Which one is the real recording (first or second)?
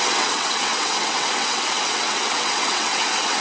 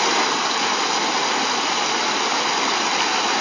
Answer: second